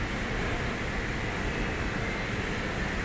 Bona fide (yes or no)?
yes